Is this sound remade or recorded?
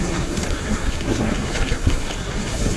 remade